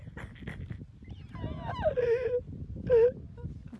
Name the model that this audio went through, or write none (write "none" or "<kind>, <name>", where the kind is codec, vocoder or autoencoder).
none